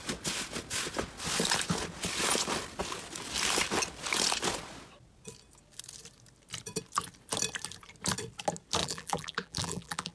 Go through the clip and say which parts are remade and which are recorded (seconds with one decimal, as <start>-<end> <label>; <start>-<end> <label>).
0.0-8.8 recorded; 8.8-10.1 remade